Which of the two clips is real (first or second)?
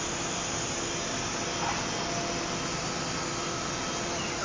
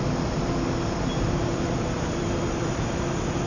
first